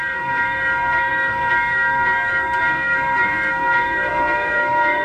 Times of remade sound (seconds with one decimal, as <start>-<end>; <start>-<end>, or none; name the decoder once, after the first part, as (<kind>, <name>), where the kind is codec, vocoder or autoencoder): 0.0-5.0 (codec, SNAC)